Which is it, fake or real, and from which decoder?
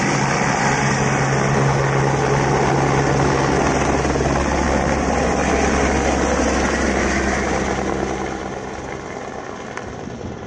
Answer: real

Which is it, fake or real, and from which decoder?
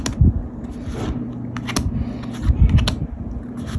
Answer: real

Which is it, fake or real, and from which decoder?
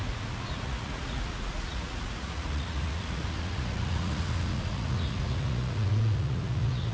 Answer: fake, vocoder, Vocos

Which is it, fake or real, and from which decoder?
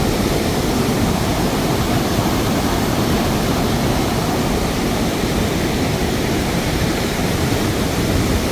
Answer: fake, vocoder, BigVGAN v2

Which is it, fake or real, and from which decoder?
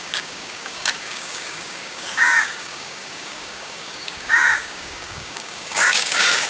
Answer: fake, codec, DAC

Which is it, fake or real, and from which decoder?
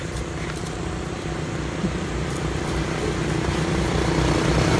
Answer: fake, vocoder, BigVGAN v2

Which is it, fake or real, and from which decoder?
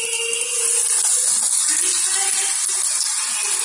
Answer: real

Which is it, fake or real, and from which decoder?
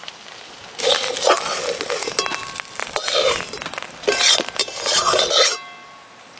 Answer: real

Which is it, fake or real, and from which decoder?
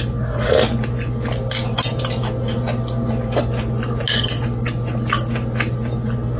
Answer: real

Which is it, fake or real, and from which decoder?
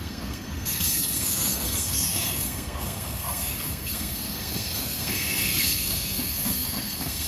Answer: fake, codec, SNAC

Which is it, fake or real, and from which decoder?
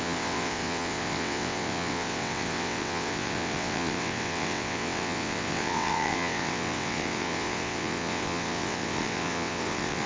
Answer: fake, vocoder, WaveNeXt